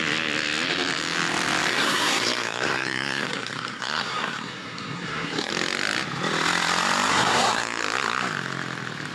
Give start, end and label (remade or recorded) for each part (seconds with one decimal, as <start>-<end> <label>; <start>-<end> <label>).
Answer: 0.0-1.7 recorded; 1.7-5.5 remade; 5.5-7.1 recorded; 7.1-7.8 remade; 7.8-9.1 recorded